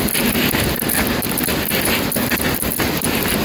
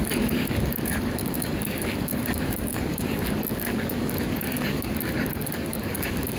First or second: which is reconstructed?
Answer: second